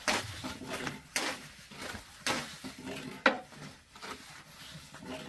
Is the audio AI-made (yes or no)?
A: no